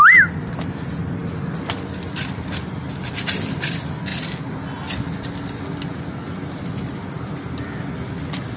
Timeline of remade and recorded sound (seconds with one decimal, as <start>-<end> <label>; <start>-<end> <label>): 0.0-8.6 recorded